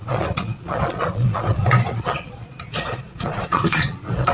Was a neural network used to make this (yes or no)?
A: yes